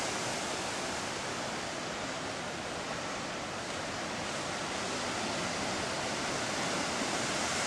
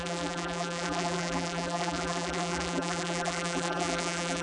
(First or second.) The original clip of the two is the first